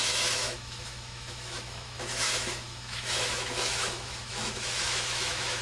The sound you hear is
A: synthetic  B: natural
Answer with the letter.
A